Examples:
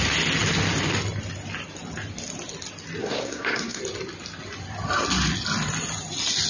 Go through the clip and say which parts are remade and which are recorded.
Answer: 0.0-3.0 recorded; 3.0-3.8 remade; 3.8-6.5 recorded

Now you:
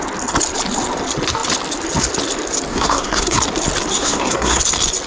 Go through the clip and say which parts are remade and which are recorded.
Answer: 0.0-2.7 recorded; 2.7-3.4 remade; 3.4-3.9 recorded; 3.9-4.6 remade; 4.6-5.1 recorded

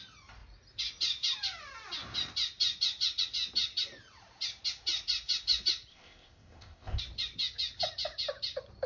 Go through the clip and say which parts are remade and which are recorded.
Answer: 0.0-5.9 recorded; 5.9-7.0 remade; 7.0-8.9 recorded